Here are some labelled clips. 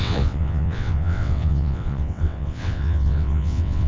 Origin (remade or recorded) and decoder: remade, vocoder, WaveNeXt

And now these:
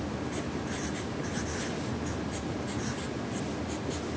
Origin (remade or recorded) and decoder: recorded